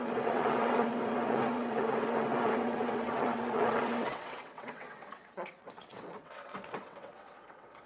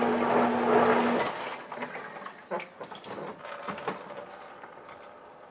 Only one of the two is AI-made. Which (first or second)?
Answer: first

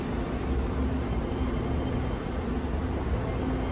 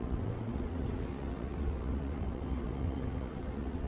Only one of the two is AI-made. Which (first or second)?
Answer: second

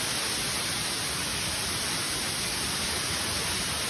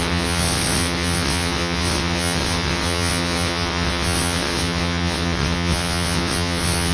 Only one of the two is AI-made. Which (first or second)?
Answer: second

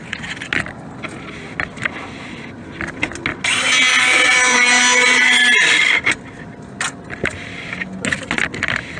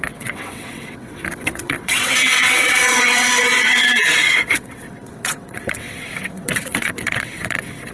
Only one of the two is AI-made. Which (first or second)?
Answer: second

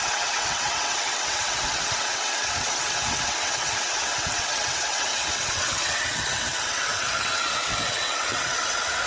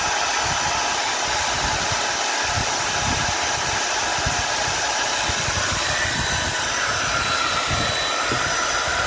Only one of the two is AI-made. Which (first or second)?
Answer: first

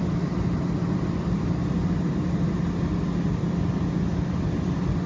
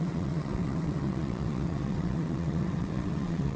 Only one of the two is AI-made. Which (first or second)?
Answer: second